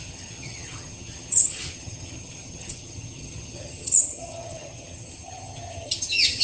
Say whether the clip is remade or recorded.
remade